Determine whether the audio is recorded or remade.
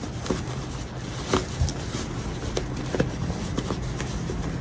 recorded